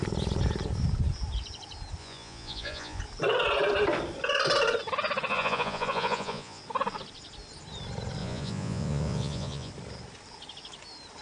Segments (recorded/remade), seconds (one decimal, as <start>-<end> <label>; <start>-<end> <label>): 0.0-2.0 recorded; 2.0-3.0 remade; 3.0-5.3 recorded; 5.3-6.6 remade; 6.6-8.2 recorded; 8.2-9.7 remade; 9.7-11.2 recorded